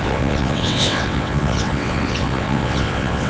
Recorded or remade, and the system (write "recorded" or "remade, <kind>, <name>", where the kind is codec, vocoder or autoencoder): remade, vocoder, WaveNeXt